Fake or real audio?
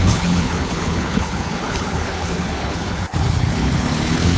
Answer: fake